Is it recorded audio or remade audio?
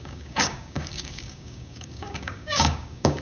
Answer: remade